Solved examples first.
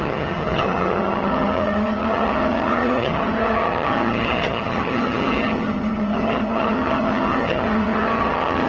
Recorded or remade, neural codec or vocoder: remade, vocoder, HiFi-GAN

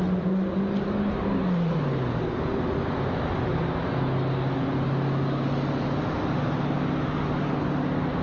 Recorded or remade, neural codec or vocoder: recorded